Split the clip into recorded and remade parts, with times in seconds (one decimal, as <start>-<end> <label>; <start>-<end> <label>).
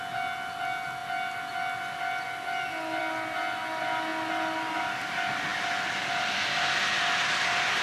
0.0-7.8 recorded